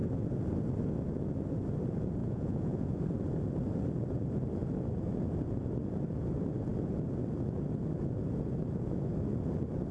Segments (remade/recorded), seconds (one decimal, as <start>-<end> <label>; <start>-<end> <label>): 0.0-2.2 recorded; 2.2-3.0 remade; 3.0-9.9 recorded